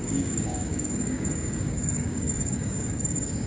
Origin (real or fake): fake